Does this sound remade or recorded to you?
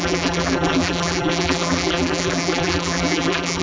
remade